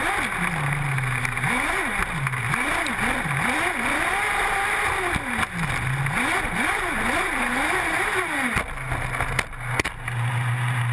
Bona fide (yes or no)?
yes